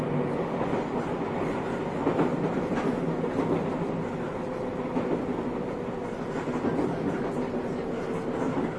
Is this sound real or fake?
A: real